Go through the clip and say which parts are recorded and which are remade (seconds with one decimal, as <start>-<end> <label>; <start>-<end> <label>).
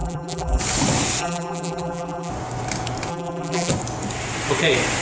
0.0-0.6 remade; 0.6-1.2 recorded; 1.2-2.3 remade; 2.3-3.1 recorded; 3.1-3.7 remade; 3.7-5.0 recorded